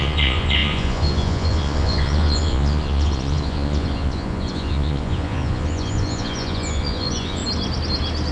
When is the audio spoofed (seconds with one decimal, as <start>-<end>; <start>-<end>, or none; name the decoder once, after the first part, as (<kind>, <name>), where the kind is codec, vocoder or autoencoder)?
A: 0.0-7.4 (vocoder, Vocos)

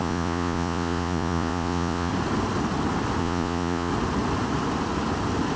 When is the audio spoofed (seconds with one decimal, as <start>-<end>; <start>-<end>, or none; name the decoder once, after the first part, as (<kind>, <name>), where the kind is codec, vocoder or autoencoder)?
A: 0.0-2.1 (vocoder, Vocos); 3.2-3.9

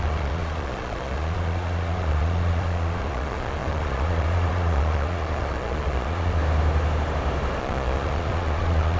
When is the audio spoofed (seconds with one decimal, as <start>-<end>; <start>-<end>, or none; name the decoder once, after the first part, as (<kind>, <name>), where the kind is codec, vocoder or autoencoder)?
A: 0.0-6.4 (vocoder, Vocos); 7.6-9.0

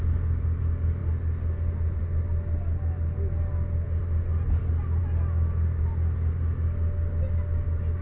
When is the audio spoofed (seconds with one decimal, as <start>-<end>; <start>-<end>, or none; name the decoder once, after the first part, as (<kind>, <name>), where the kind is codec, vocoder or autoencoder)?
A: none

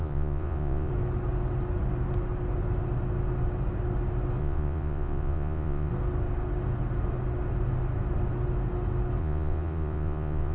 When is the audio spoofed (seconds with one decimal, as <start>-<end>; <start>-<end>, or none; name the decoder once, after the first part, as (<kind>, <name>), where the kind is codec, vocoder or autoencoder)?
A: 0.0-0.9 (vocoder, Vocos); 4.4-5.9; 9.2-10.5

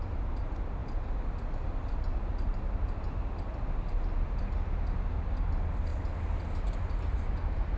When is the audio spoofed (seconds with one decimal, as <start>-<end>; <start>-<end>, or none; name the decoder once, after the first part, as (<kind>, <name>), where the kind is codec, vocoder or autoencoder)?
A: none